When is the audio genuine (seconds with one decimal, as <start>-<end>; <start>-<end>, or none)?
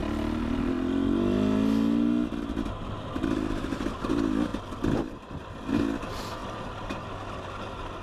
0.0-4.5; 5.6-6.4; 7.4-8.0